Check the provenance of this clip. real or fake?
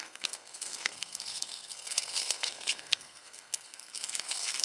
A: fake